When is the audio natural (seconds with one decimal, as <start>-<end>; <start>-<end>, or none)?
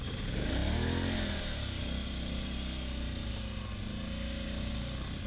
0.0-5.3